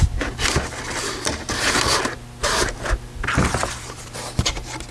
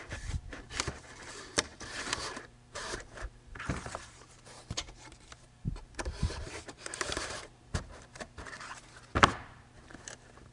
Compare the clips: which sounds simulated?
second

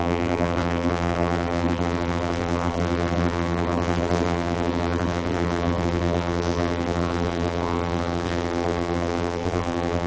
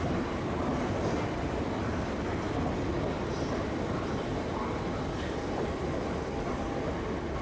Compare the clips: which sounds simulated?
first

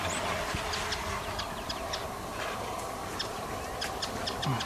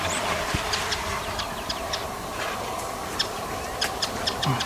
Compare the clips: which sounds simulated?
second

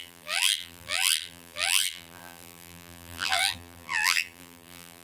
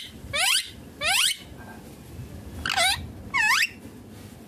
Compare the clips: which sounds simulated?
first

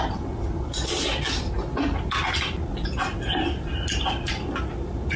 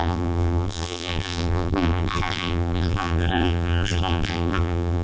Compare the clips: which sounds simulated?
second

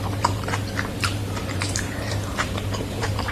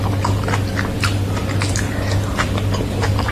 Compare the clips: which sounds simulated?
first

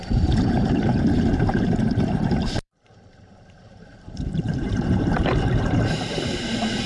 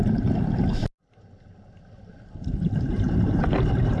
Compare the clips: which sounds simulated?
first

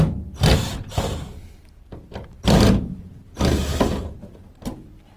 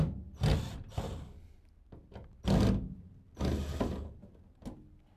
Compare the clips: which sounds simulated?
first